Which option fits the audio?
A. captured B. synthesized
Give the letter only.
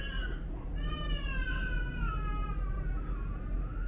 A